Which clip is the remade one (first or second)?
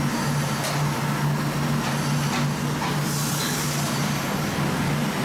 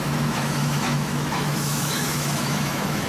second